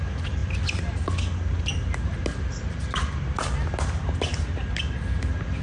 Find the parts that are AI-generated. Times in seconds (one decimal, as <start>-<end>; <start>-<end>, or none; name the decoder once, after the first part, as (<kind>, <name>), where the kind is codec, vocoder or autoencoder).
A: none